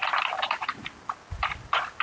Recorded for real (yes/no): yes